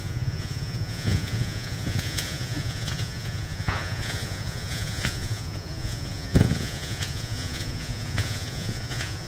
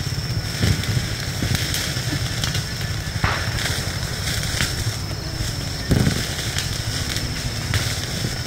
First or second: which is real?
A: second